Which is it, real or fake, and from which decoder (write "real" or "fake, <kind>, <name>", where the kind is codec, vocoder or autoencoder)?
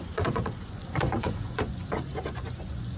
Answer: fake, vocoder, Vocos